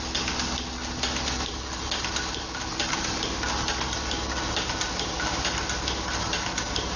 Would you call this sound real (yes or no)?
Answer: yes